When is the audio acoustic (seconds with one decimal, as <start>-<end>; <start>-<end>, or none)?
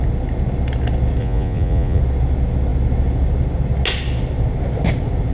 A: 0.0-1.2; 2.0-5.3